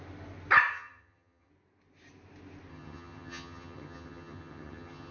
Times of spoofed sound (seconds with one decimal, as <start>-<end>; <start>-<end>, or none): 0.7-1.5; 2.7-5.1